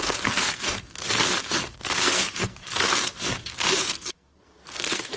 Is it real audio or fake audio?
fake